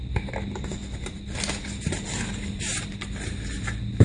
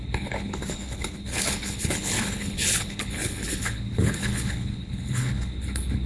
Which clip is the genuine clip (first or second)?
first